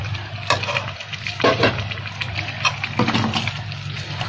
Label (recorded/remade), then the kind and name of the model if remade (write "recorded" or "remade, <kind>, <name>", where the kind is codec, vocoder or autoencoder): recorded